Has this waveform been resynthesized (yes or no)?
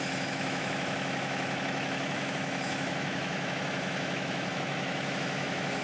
yes